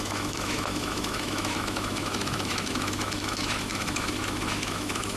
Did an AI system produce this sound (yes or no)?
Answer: yes